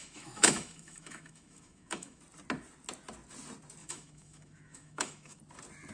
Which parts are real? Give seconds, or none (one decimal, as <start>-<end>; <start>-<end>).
2.2-3.8; 5.4-5.9

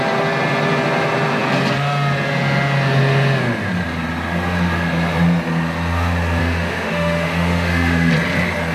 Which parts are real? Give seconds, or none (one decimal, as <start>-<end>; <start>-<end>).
0.0-6.4; 8.1-8.7

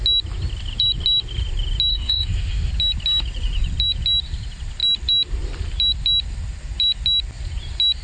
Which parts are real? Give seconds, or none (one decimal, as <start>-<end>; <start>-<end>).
0.0-1.9; 2.7-8.0

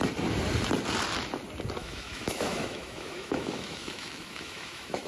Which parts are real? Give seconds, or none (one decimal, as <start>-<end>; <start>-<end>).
0.0-1.8

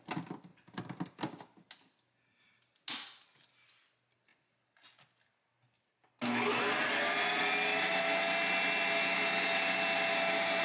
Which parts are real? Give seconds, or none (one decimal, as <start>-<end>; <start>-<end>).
0.0-10.6

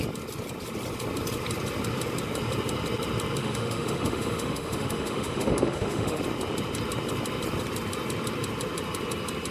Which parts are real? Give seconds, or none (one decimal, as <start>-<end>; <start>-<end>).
0.0-3.4; 6.2-9.5

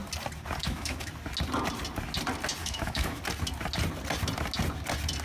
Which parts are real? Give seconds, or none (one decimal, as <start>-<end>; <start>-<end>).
0.0-0.6; 1.1-2.6; 3.2-5.2